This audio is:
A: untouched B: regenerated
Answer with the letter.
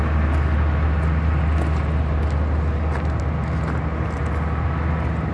A